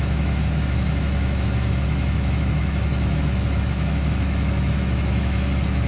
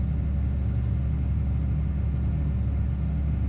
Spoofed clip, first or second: first